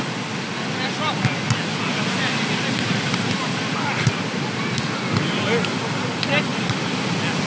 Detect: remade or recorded recorded